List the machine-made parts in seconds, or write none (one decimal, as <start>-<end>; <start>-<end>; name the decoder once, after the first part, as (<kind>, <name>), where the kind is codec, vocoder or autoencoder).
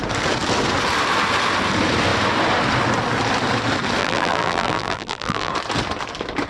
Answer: 4.0-5.5 (vocoder, BigVGAN v2)